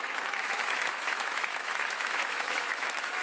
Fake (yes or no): yes